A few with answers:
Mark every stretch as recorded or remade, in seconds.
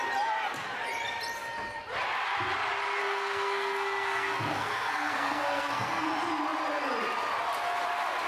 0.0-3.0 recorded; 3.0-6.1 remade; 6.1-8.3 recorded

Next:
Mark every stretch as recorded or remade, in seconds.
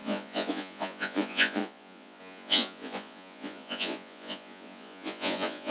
0.0-5.7 remade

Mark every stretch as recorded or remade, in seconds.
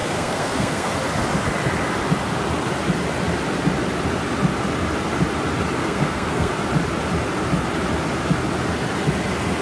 0.0-0.9 remade; 0.9-5.8 recorded; 5.8-6.5 remade; 6.5-9.6 recorded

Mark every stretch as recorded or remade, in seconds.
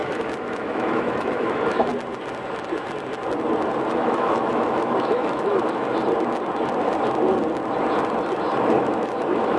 0.0-1.9 remade; 1.9-3.9 recorded; 3.9-5.9 remade; 5.9-8.6 recorded; 8.6-9.6 remade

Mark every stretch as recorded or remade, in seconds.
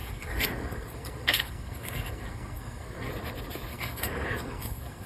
0.0-3.1 remade; 3.1-3.7 recorded; 3.7-5.1 remade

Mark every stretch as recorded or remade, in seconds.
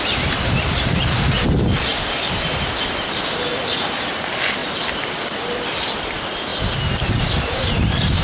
0.0-1.9 remade; 1.9-2.5 recorded; 2.5-3.5 remade; 3.5-4.1 recorded; 4.1-4.6 remade; 4.6-5.3 recorded; 5.3-6.5 remade; 6.5-7.2 recorded; 7.2-8.2 remade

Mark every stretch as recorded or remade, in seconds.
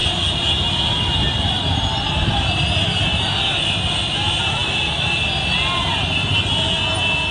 0.0-7.3 recorded